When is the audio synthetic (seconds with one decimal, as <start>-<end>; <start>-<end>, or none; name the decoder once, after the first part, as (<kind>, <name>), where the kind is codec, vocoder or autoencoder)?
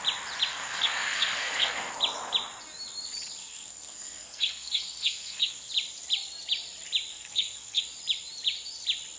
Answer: 0.5-1.9 (codec, SNAC); 3.4-5.7; 7.1-7.8